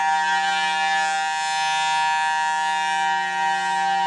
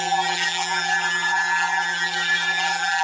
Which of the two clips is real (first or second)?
first